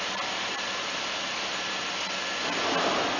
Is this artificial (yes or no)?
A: no